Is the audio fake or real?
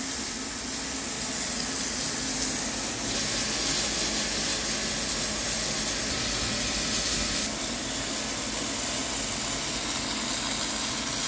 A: real